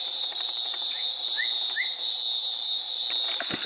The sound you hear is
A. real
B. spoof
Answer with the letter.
A